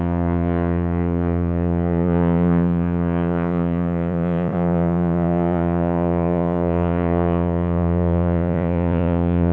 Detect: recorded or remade remade